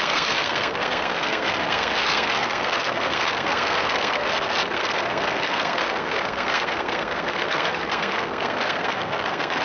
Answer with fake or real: fake